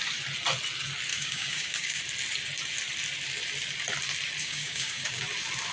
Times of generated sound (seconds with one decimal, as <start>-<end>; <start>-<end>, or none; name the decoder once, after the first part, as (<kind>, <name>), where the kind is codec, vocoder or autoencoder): 1.1-2.0 (codec, DAC); 4.4-5.2

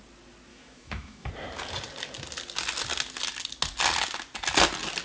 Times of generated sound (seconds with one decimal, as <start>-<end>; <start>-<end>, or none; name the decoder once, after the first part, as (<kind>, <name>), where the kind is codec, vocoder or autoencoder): 0.5-1.3 (autoencoder, DAC-VAE)

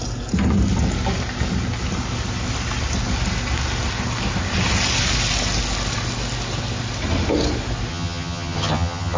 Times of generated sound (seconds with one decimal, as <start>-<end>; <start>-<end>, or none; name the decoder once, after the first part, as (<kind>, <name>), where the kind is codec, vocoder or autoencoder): 7.9-9.2 (vocoder, HiFi-GAN)